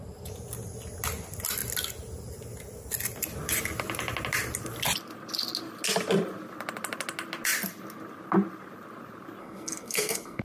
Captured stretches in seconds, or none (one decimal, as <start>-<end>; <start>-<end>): 0.0-9.4